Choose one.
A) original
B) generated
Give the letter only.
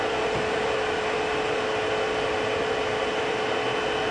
A